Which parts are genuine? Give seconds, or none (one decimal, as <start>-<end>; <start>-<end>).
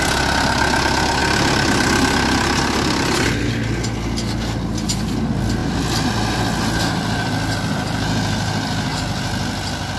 0.0-10.0